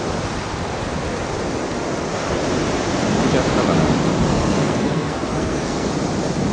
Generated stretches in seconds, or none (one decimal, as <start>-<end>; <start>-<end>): 4.3-5.9